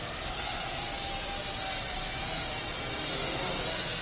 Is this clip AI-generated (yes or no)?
no